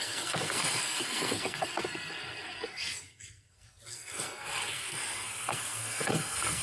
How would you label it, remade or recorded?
remade